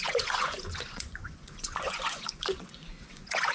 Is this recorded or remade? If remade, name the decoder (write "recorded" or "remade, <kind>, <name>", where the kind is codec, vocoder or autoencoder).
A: remade, vocoder, Vocos